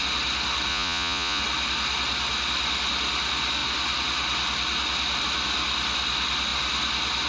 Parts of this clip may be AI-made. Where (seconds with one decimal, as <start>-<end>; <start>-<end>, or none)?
0.7-1.4

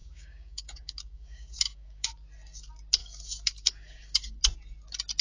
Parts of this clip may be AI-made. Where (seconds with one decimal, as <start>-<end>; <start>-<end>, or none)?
0.0-2.1; 3.0-4.4

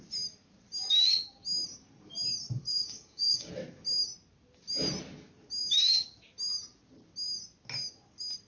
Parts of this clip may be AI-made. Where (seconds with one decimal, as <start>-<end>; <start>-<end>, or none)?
2.7-3.5

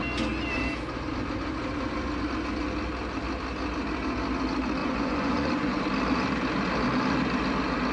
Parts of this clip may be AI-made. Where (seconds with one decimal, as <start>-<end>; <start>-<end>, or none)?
4.8-5.8

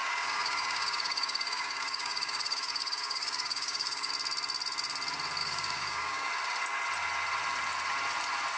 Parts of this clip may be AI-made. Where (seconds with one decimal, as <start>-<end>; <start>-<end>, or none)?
0.0-4.1; 5.4-6.3

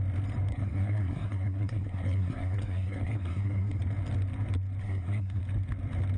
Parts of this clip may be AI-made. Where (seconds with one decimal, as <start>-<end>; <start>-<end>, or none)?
0.5-3.8; 4.8-5.4

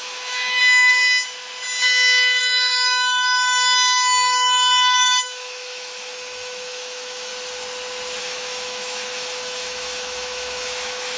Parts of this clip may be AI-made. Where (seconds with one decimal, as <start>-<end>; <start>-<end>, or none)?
0.0-0.6; 2.4-7.3; 8.2-11.2